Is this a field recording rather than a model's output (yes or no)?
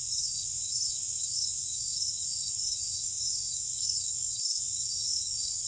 no